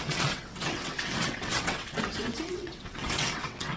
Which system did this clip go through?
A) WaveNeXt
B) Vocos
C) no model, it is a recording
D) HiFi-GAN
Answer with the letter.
A